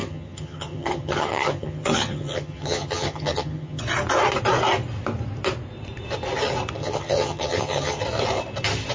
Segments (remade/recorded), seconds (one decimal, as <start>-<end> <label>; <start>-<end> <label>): 0.0-3.8 remade; 3.8-6.8 recorded; 6.8-8.0 remade; 8.0-8.9 recorded